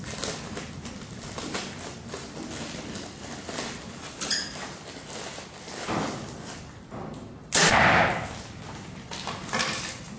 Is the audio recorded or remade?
recorded